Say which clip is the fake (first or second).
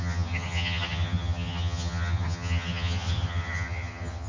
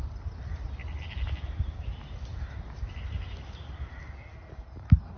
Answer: first